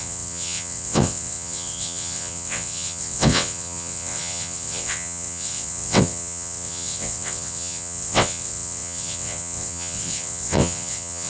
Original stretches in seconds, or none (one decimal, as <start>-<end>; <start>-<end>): none